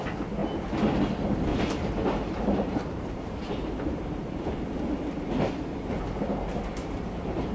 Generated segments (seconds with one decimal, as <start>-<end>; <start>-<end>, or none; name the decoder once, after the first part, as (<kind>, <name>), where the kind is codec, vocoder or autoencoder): 1.5-4.5 (vocoder, BigVGAN v2); 6.8-7.5